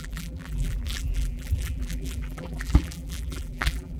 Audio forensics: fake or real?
fake